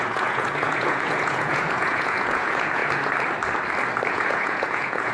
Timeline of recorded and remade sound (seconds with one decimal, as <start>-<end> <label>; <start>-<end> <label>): 0.0-2.8 remade; 2.8-4.1 recorded; 4.1-5.1 remade